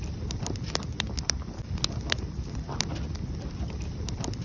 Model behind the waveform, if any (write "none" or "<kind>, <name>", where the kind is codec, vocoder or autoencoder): vocoder, BigVGAN v2